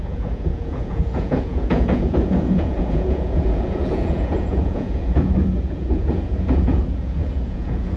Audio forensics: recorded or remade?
remade